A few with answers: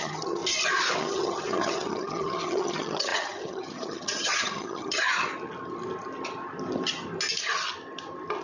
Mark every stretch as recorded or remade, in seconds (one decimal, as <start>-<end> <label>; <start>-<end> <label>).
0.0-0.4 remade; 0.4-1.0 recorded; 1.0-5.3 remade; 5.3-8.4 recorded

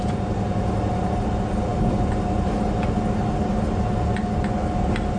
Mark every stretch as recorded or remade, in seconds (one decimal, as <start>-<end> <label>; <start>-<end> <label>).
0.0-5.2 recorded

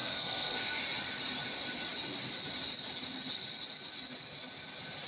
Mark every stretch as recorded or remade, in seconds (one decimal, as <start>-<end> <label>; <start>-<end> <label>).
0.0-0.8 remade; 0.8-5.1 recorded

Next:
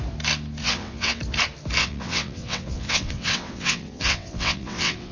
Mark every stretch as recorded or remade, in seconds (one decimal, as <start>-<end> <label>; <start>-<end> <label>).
0.0-0.6 recorded; 0.6-1.2 remade; 1.2-1.8 recorded; 1.8-5.1 remade